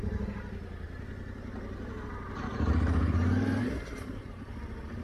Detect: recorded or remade remade